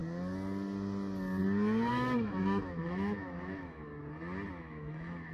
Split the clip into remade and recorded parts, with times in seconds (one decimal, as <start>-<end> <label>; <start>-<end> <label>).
0.0-1.9 recorded; 1.9-3.9 remade; 3.9-4.5 recorded; 4.5-5.3 remade